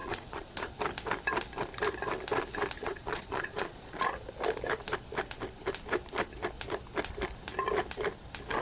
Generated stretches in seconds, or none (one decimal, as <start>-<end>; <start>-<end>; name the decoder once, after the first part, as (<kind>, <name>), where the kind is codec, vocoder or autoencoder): 0.0-0.7 (vocoder, Vocos); 2.8-4.1